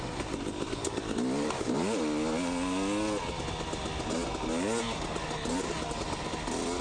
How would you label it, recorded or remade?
recorded